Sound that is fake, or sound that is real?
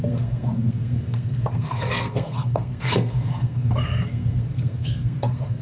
fake